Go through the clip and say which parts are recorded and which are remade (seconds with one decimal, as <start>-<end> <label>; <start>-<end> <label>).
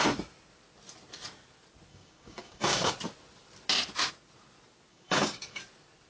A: 0.0-1.9 recorded; 1.9-2.9 remade; 2.9-4.9 recorded; 4.9-5.6 remade; 5.6-6.1 recorded